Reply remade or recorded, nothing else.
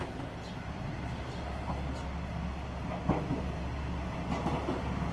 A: recorded